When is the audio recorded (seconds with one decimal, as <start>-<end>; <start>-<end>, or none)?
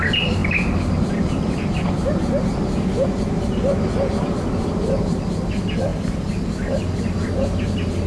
0.0-8.1